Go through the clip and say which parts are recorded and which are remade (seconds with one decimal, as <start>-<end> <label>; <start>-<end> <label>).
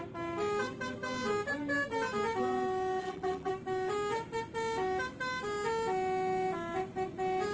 0.0-3.0 recorded; 3.0-3.5 remade; 3.5-7.5 recorded